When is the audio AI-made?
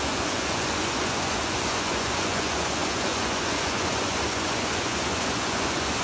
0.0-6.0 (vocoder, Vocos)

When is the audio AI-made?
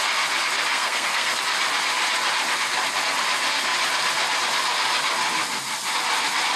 0.7-1.4 (codec, SNAC)